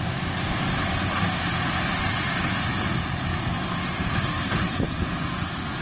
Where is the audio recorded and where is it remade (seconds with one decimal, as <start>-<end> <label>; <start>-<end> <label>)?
0.0-3.3 recorded; 3.3-4.8 remade; 4.8-5.8 recorded